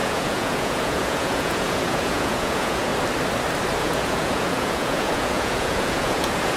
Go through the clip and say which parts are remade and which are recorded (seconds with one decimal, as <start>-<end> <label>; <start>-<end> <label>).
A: 0.0-2.9 remade; 2.9-3.8 recorded; 3.8-6.6 remade